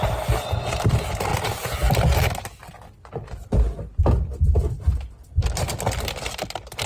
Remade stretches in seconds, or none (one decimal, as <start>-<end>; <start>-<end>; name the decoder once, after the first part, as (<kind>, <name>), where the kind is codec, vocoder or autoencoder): none